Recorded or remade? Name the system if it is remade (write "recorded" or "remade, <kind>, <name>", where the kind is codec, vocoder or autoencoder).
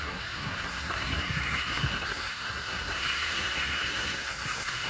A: remade, codec, SNAC